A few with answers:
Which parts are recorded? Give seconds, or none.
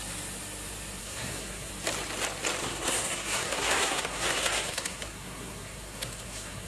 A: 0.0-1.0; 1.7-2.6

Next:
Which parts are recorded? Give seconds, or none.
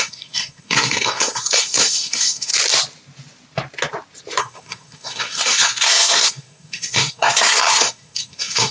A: 2.5-4.4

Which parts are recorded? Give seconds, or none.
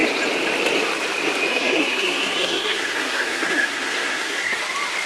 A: 0.0-1.5; 4.6-5.1